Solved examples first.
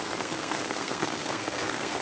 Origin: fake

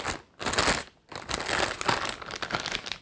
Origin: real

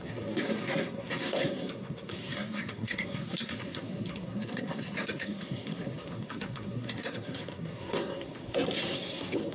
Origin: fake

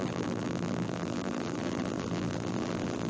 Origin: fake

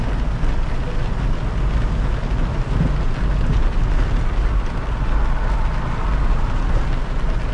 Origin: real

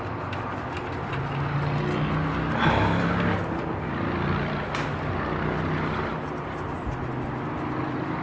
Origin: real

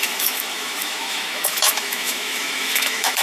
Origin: fake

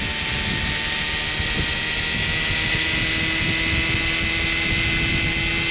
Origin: real